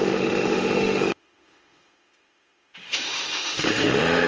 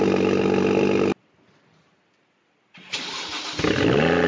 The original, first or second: second